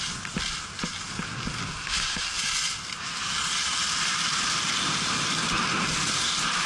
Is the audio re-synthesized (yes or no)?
no